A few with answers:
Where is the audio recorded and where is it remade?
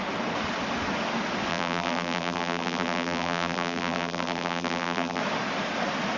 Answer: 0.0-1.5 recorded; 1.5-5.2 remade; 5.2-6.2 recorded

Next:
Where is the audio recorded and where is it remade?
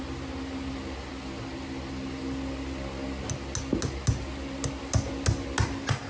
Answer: 0.0-6.1 recorded